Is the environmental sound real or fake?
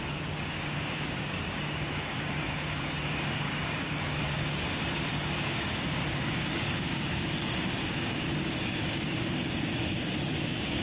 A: fake